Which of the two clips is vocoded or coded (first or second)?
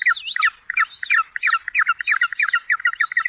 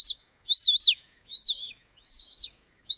second